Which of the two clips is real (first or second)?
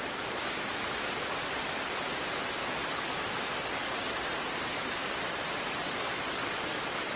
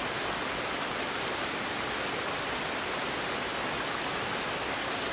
second